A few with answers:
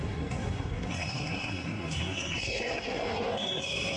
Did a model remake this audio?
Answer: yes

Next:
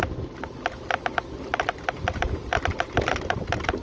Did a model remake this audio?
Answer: no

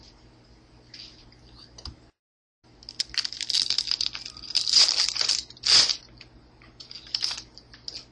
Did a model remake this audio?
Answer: no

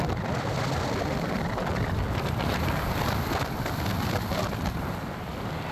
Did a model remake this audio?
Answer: no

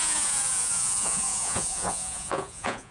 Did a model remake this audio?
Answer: yes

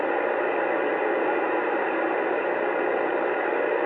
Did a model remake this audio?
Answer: no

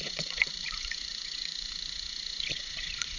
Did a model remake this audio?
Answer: yes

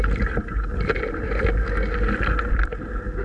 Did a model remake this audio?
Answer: no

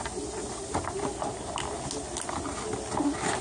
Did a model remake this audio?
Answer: no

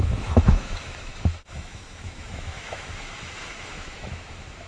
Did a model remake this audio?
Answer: yes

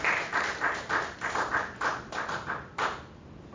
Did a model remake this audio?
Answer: no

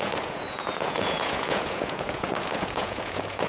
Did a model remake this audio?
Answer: yes